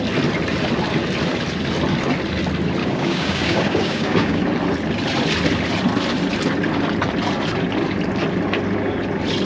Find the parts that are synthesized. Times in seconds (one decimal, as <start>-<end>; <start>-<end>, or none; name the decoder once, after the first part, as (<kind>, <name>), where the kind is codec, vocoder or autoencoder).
2.8-4.4 (codec, DAC)